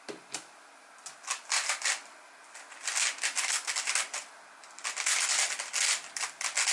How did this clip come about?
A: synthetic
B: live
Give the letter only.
B